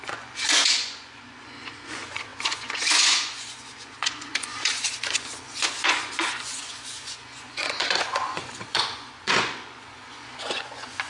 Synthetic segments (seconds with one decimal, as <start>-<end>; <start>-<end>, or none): 0.0-11.1